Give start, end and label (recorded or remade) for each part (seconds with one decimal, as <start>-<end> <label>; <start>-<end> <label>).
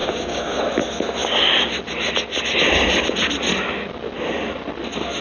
0.0-0.6 remade; 0.6-5.2 recorded